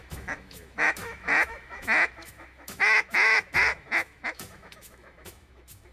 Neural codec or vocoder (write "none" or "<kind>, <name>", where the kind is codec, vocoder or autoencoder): autoencoder, DAC-VAE